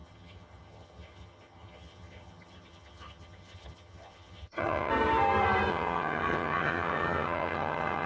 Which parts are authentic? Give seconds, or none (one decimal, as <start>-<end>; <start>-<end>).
4.9-5.7